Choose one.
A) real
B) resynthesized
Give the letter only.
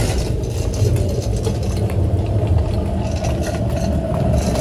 A